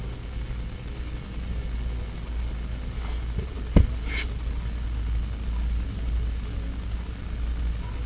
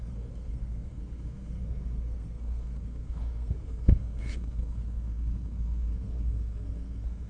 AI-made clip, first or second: second